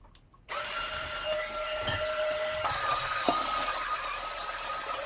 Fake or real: real